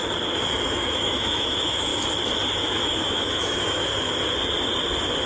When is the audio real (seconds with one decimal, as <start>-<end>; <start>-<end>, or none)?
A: 0.0-0.6; 1.9-2.6; 3.8-5.3